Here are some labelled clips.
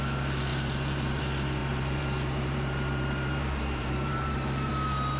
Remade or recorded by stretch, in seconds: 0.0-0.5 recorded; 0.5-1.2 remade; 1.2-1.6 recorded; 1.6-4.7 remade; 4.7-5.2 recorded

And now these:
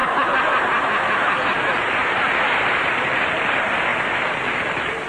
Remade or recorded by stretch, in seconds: 0.0-3.1 recorded; 3.1-3.9 remade; 3.9-4.6 recorded; 4.6-5.1 remade

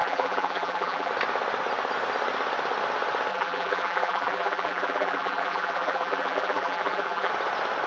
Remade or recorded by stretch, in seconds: 0.0-1.1 remade; 1.1-3.3 recorded; 3.3-7.3 remade; 7.3-7.9 recorded

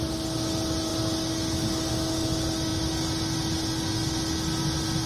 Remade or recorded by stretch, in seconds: 0.0-5.1 recorded

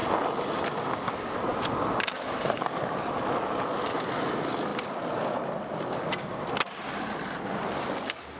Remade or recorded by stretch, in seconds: 0.0-4.7 recorded; 4.7-5.8 remade; 5.8-8.4 recorded

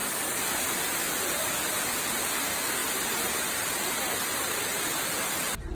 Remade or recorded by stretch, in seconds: 0.0-1.6 remade; 1.6-5.7 recorded

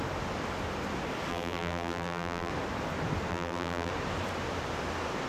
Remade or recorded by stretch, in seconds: 0.0-1.3 recorded; 1.3-2.5 remade; 2.5-3.3 recorded; 3.3-3.9 remade; 3.9-5.3 recorded